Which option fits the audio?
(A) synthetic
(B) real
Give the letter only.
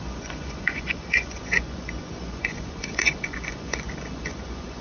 A